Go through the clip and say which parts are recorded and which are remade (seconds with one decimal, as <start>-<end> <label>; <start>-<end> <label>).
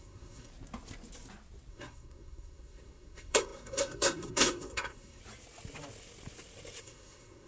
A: 0.0-0.5 remade; 0.5-1.7 recorded; 1.7-5.2 remade; 5.2-6.8 recorded; 6.8-7.5 remade